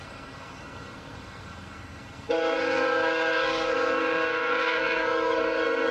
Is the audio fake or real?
fake